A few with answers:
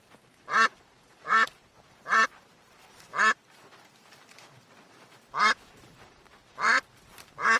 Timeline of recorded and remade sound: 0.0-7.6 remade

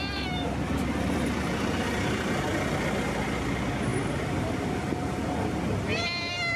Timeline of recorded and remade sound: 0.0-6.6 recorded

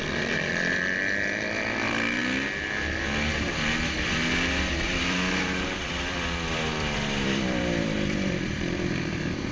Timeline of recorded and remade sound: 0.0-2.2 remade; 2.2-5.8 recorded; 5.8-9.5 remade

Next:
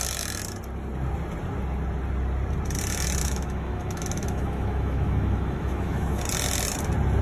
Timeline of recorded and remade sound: 0.0-3.2 recorded; 3.2-6.2 remade; 6.2-7.2 recorded

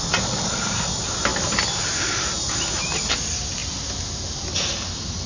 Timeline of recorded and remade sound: 0.0-5.3 recorded